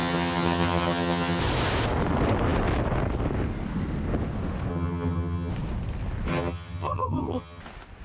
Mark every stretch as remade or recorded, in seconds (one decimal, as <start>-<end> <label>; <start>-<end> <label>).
0.0-1.4 remade; 1.4-4.7 recorded; 4.7-5.5 remade; 5.5-6.3 recorded; 6.3-7.6 remade; 7.6-8.0 recorded